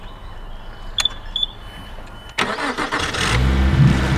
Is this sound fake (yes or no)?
no